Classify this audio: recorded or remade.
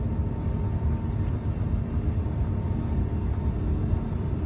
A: recorded